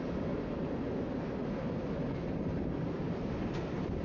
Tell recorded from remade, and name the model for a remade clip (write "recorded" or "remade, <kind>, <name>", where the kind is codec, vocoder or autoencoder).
recorded